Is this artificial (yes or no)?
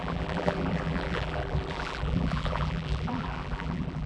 yes